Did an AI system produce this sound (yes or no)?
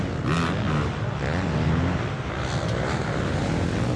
no